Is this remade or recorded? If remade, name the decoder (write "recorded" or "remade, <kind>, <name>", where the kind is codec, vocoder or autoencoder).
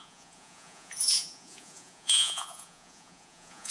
remade, vocoder, Vocos